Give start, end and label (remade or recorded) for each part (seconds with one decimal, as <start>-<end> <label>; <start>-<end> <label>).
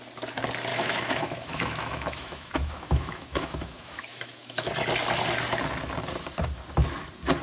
0.0-0.7 recorded; 0.7-4.7 remade; 4.7-7.4 recorded